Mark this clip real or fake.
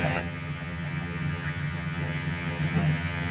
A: fake